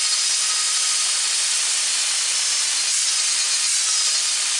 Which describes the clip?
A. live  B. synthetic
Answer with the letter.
A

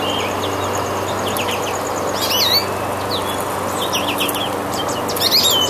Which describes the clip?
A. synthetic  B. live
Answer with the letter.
B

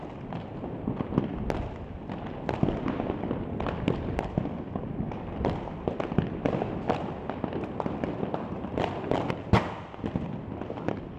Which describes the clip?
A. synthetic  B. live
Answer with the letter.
B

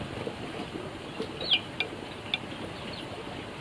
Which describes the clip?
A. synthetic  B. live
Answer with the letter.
B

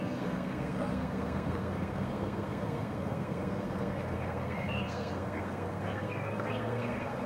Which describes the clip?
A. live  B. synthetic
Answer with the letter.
B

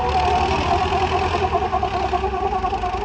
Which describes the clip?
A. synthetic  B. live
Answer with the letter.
B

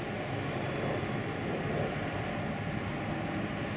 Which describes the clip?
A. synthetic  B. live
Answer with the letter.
B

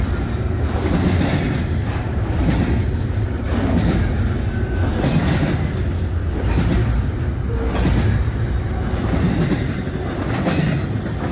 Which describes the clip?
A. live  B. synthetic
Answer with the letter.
A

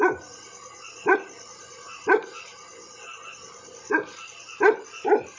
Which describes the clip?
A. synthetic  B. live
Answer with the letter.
B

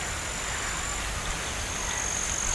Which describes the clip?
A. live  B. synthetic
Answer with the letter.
A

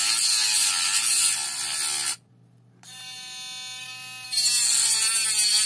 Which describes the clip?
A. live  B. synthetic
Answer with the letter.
A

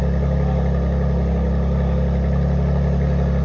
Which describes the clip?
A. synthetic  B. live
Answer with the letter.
B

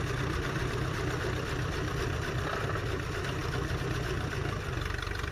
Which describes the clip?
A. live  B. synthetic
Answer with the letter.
A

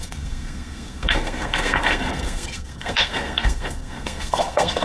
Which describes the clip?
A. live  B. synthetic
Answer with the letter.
B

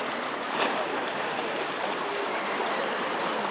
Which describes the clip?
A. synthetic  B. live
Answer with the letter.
B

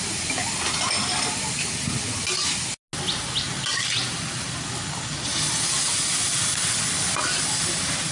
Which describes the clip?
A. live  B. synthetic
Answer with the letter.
A